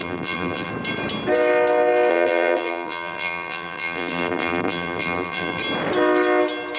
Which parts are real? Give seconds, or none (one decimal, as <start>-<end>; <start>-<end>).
0.7-2.1; 5.6-6.8